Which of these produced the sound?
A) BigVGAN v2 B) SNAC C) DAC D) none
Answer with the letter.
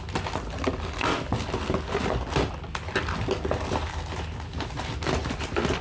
D